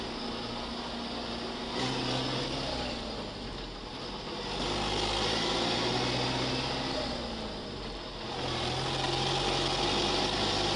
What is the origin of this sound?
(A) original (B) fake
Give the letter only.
A